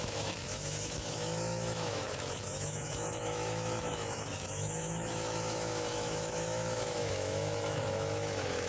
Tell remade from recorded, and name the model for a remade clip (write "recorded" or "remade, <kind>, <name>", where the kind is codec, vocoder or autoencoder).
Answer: remade, autoencoder, DAC-VAE